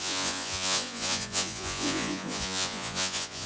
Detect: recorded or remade remade